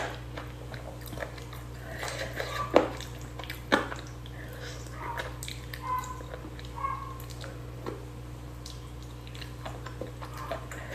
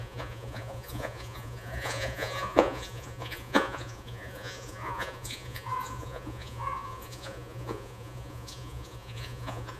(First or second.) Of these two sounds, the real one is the first